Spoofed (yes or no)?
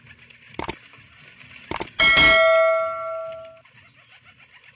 no